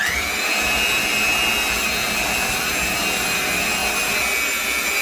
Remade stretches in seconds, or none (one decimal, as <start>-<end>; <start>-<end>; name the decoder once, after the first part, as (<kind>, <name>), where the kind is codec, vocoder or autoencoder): none